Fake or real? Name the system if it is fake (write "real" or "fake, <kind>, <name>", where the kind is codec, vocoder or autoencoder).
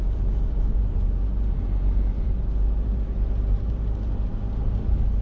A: fake, vocoder, BigVGAN v2